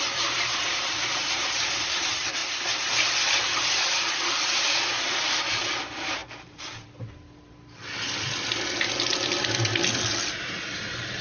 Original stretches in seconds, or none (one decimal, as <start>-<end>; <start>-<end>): 2.4-4.1; 6.2-10.3